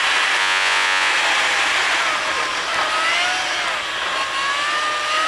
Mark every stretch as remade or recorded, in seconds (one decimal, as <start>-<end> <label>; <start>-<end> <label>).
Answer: 0.0-0.4 recorded; 0.4-1.1 remade; 1.1-5.3 recorded